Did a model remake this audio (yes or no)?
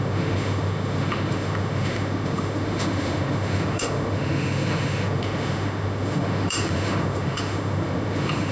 yes